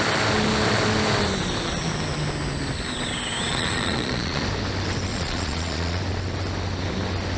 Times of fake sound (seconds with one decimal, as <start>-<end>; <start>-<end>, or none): 3.5-4.4; 5.1-6.0